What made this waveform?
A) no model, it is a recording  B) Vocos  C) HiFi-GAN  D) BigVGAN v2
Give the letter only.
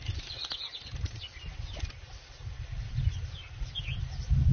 A